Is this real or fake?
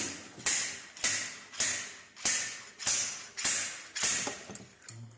real